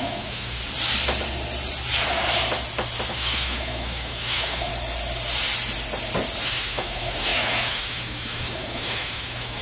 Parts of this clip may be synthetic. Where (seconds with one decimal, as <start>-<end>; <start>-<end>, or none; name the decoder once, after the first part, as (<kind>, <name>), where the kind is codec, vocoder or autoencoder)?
0.0-0.6 (autoencoder, DAC-VAE); 3.1-4.7; 6.4-9.6